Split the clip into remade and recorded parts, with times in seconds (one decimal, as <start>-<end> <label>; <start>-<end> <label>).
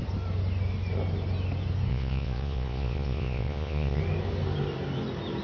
0.0-1.9 recorded; 1.9-4.0 remade; 4.0-5.4 recorded